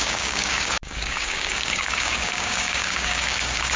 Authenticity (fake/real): fake